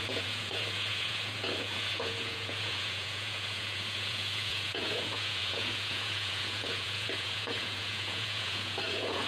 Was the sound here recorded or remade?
remade